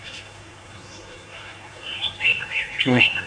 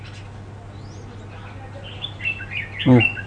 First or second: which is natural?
second